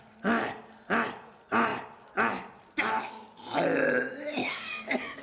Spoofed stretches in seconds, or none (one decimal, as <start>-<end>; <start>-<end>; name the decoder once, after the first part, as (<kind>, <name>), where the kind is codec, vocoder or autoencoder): 4.4-5.2 (codec, DAC)